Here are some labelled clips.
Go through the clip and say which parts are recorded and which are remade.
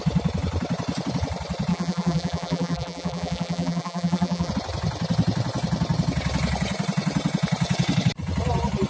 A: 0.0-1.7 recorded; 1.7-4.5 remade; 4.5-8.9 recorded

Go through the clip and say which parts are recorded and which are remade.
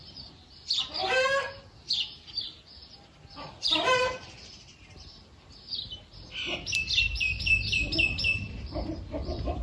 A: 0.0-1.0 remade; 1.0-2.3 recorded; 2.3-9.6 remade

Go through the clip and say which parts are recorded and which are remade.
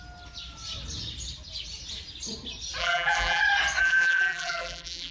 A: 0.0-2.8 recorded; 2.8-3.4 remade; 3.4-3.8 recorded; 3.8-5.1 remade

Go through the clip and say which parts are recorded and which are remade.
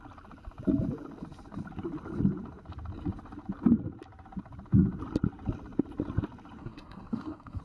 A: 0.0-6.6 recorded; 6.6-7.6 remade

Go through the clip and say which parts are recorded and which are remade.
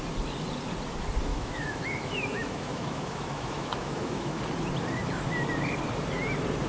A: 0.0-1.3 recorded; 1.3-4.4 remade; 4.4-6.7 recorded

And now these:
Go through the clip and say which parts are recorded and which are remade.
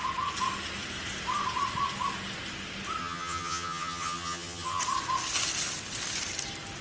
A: 0.0-3.0 recorded; 3.0-4.8 remade; 4.8-6.8 recorded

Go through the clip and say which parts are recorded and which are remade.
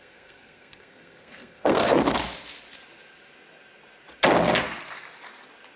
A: 0.0-1.9 remade; 1.9-5.8 recorded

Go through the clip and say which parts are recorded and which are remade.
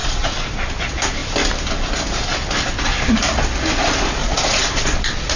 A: 0.0-0.6 remade; 0.6-4.2 recorded; 4.2-5.4 remade